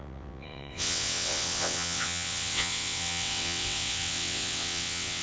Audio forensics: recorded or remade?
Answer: remade